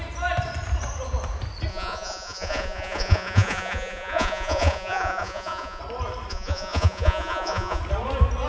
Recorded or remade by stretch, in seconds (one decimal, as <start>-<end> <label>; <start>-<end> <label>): 0.0-1.7 recorded; 1.7-5.8 remade; 5.8-6.3 recorded; 6.3-7.8 remade; 7.8-8.5 recorded